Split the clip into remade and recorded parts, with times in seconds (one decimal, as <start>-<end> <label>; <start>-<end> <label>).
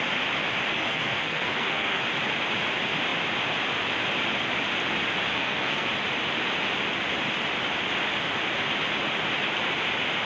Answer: 0.0-0.7 recorded; 0.7-2.0 remade; 2.0-5.3 recorded; 5.3-5.9 remade; 5.9-10.3 recorded